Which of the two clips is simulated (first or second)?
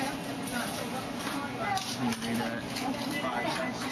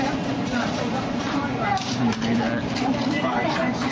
second